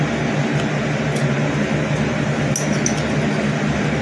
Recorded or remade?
recorded